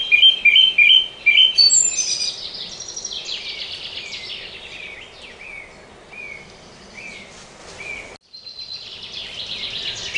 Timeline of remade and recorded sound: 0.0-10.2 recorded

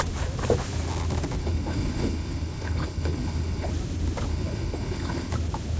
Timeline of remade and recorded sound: 0.0-1.4 recorded; 1.4-3.7 remade; 3.7-4.3 recorded; 4.3-5.3 remade; 5.3-5.8 recorded

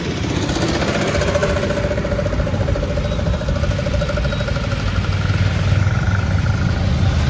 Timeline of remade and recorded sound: 0.0-7.3 recorded

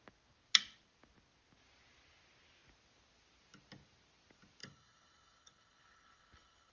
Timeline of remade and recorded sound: 0.0-4.6 recorded; 4.6-6.7 remade

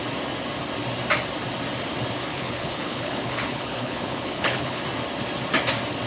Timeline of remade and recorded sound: 0.0-2.3 recorded; 2.3-4.8 remade; 4.8-6.1 recorded

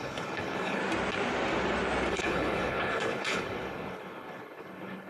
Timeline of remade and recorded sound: 0.0-0.8 remade; 0.8-2.1 recorded; 2.1-5.1 remade